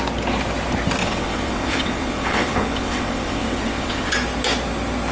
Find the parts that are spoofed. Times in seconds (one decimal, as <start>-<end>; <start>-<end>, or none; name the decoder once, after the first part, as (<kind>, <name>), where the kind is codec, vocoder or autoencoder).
1.0-4.1 (vocoder, WaveNeXt)